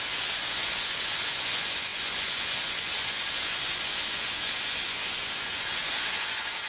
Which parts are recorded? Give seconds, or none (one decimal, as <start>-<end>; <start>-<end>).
none